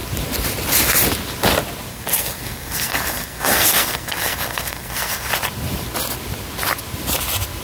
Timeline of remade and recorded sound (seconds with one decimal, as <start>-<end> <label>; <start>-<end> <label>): 0.0-1.9 recorded; 1.9-5.3 remade; 5.3-7.6 recorded